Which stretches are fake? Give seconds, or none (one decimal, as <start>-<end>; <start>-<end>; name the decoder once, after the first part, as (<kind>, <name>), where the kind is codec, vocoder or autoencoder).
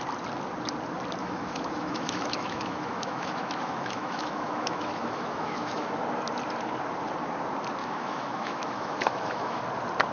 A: 1.2-5.9 (autoencoder, DAC-VAE); 7.8-9.6